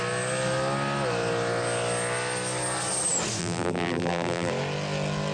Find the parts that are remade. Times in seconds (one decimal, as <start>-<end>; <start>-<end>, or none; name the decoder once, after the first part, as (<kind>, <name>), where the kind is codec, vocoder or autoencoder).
3.4-4.5 (vocoder, BigVGAN v2)